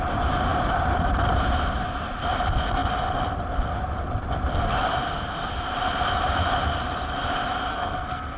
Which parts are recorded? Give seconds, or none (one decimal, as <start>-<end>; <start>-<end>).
0.0-7.7